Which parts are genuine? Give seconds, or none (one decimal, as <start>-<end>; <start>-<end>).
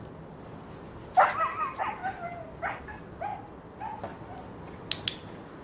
0.0-5.6